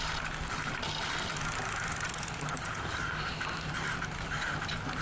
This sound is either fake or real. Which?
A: real